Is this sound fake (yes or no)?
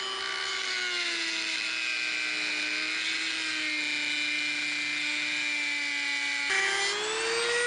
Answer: no